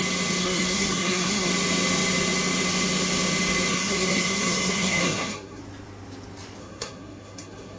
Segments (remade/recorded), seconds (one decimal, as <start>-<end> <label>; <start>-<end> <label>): 0.0-0.4 recorded; 0.4-1.5 remade; 1.5-3.7 recorded; 3.7-5.6 remade; 5.6-6.6 recorded; 6.6-7.8 remade